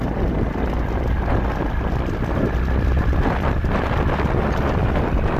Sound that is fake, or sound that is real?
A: real